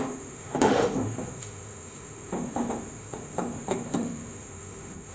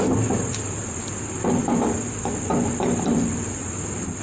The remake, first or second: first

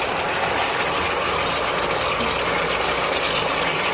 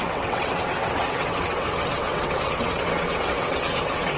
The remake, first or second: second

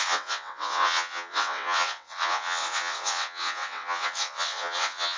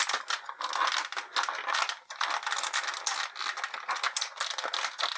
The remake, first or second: first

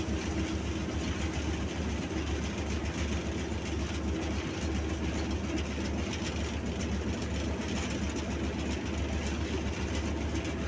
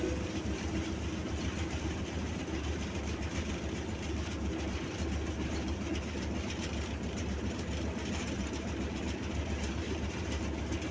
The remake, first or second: second